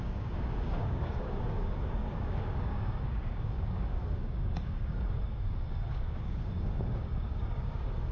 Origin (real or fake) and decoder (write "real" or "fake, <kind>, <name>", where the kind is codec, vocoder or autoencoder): fake, codec, DAC